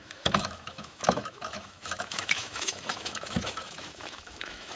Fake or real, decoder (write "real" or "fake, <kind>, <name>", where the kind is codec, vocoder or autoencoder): fake, autoencoder, DAC-VAE